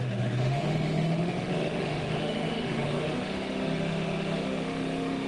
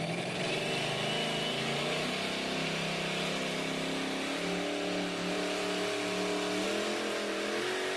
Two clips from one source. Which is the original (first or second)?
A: second